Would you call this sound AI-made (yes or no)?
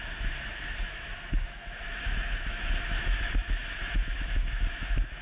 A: yes